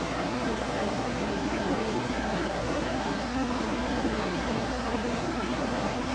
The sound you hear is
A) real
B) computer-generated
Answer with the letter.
B